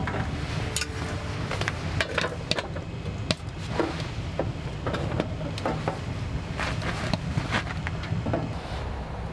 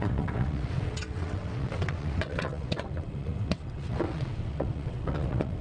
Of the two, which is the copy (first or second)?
second